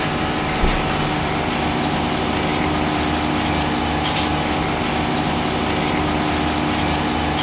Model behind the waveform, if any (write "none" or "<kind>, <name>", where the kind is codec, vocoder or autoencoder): none